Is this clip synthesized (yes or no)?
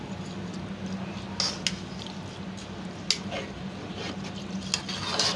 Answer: no